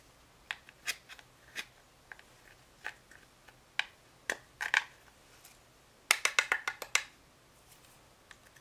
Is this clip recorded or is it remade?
recorded